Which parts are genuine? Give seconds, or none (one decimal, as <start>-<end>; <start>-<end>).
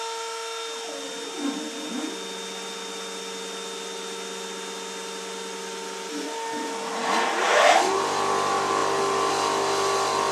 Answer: 0.0-10.3